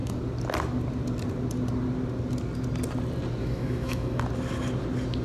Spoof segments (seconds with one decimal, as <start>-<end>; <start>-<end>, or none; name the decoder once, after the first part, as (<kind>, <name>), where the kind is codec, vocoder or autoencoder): 3.4-4.2 (autoencoder, DAC-VAE)